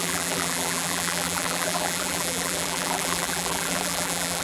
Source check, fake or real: fake